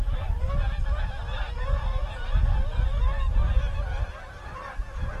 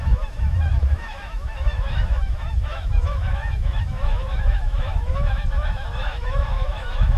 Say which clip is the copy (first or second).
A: second